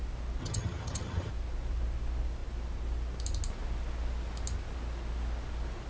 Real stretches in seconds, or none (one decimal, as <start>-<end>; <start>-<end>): 0.0-0.4; 1.3-5.9